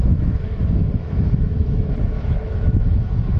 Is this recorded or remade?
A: remade